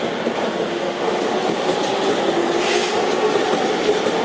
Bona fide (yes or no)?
yes